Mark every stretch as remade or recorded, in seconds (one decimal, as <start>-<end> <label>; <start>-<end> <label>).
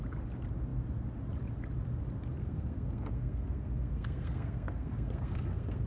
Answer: 0.0-2.4 recorded; 2.4-5.9 remade